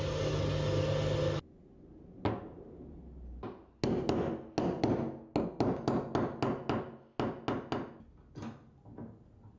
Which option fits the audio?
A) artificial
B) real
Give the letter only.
B